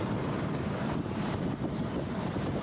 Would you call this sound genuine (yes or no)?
no